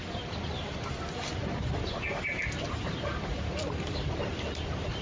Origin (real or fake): real